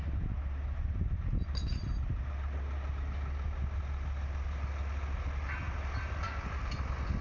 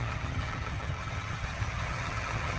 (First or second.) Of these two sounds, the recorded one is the first